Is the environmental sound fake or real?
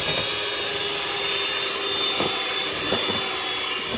real